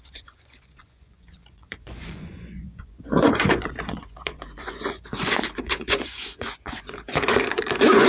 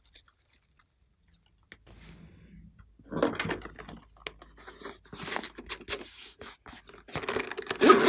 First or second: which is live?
second